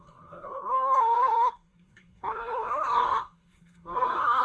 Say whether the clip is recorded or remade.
remade